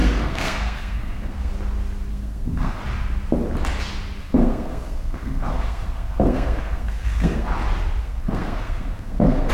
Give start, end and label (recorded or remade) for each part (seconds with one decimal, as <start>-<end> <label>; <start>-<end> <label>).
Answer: 0.0-1.5 remade; 1.5-2.1 recorded; 2.1-2.8 remade; 2.8-4.2 recorded; 4.2-7.5 remade; 7.5-8.0 recorded; 8.0-9.5 remade